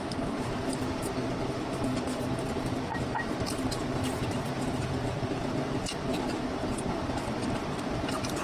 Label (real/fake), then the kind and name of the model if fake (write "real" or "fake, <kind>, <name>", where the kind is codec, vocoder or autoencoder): fake, vocoder, BigVGAN v2